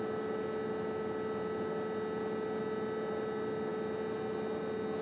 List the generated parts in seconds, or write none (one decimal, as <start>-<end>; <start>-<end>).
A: none